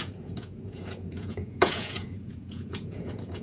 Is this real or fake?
fake